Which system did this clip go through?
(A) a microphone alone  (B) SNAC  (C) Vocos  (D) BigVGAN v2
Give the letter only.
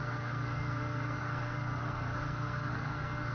B